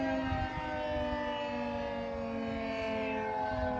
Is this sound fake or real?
real